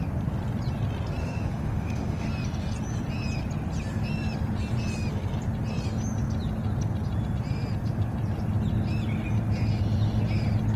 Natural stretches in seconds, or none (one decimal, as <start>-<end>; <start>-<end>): 0.0-1.2; 2.3-10.8